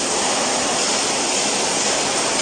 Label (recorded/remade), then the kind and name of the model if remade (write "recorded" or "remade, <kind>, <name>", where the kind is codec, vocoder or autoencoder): recorded